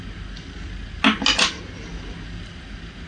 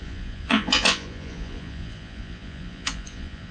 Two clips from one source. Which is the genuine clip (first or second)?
first